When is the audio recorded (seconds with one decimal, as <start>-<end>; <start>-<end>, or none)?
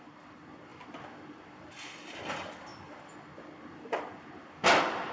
0.0-5.1